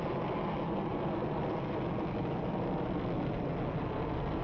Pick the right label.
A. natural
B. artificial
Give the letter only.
A